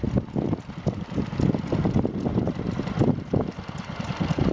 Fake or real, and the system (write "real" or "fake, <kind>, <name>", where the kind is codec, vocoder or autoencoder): real